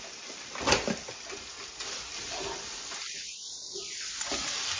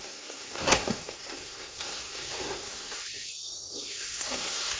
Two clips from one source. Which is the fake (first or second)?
second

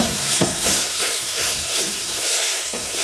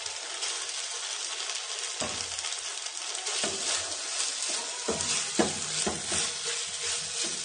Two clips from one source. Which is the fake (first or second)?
first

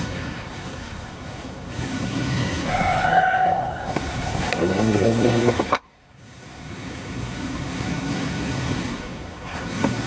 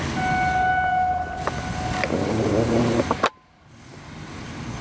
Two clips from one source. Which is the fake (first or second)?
first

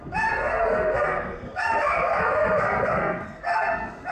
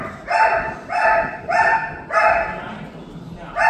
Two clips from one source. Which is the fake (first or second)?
first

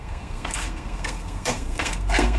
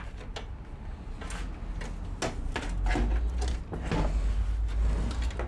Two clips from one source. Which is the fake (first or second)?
first